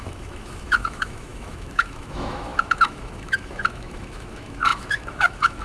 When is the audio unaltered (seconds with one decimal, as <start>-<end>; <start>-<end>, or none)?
none